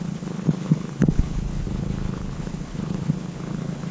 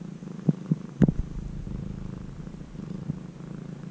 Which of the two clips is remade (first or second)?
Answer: first